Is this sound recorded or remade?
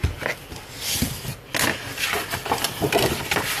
recorded